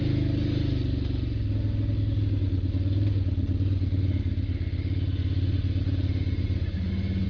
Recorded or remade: recorded